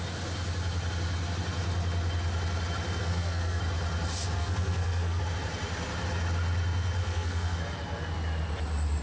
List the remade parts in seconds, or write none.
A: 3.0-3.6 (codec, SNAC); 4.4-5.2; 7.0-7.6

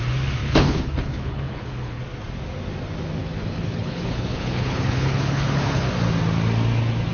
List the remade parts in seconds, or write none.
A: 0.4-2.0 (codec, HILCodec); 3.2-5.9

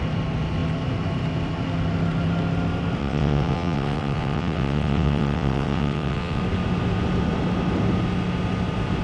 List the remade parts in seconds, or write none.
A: 3.0-6.4 (vocoder, WaveNeXt)

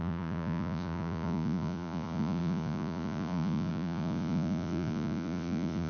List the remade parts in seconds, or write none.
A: 0.0-5.9 (vocoder, Vocos)